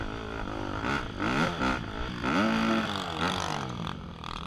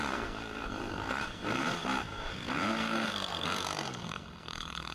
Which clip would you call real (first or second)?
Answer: first